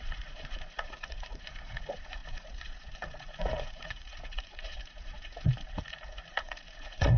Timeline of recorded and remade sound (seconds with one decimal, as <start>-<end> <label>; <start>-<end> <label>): 0.0-7.2 remade